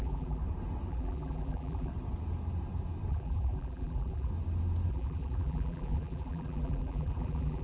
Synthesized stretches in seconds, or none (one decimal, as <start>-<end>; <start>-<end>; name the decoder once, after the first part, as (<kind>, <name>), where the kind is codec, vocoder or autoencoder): 0.0-0.4 (vocoder, BigVGAN v2); 0.9-1.9; 3.1-4.3; 4.9-7.6

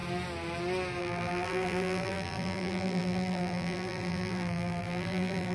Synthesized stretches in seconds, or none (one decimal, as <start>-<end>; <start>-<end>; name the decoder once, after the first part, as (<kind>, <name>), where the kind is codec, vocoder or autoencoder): 1.0-5.5 (vocoder, BigVGAN v2)